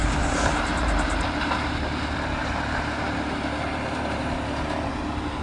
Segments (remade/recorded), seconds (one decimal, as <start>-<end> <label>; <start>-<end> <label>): 0.0-1.5 remade; 1.5-2.4 recorded; 2.4-4.9 remade; 4.9-5.4 recorded